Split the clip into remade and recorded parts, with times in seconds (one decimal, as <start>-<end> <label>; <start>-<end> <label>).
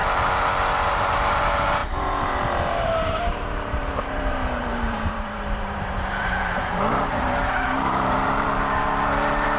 0.0-0.9 recorded; 0.9-9.6 remade